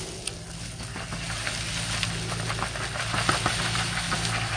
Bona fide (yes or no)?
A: yes